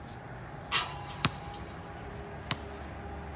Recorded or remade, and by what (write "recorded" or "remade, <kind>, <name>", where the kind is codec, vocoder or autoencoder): recorded